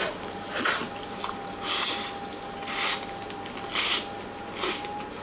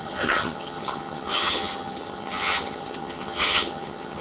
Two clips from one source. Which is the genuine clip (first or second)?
first